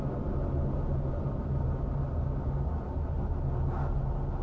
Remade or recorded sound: recorded